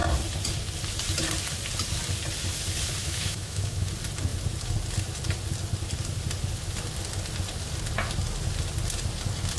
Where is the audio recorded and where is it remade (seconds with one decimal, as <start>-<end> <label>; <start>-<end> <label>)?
0.0-3.0 recorded; 3.0-3.9 remade; 3.9-9.6 recorded